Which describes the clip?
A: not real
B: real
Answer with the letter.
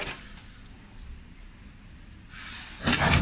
B